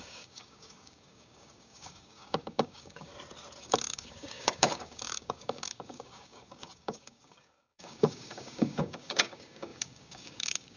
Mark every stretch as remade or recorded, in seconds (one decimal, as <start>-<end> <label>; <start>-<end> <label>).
0.0-3.1 remade; 3.1-3.6 recorded; 3.6-10.8 remade